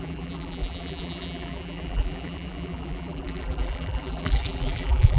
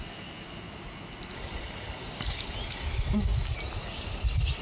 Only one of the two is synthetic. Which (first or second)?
first